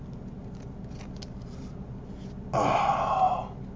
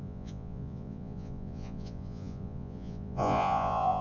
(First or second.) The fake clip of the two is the second